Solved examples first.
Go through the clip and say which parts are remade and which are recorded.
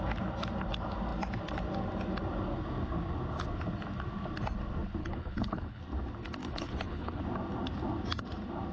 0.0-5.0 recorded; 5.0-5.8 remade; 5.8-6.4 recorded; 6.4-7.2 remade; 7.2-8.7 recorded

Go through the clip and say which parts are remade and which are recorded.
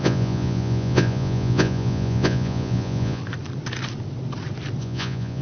0.0-3.2 remade; 3.2-4.8 recorded; 4.8-5.4 remade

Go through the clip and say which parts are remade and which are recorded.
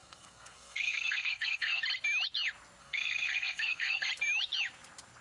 0.0-1.8 remade; 1.8-2.8 recorded; 2.8-4.1 remade; 4.1-5.2 recorded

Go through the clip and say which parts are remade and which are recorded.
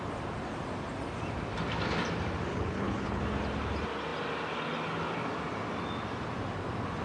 0.0-2.5 recorded; 2.5-3.2 remade; 3.2-7.0 recorded